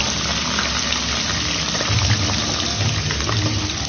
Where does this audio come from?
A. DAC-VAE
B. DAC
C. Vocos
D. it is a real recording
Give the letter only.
D